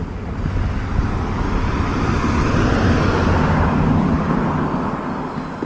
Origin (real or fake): real